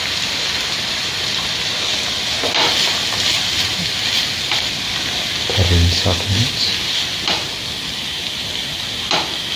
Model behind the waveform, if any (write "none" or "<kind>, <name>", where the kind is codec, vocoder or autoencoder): none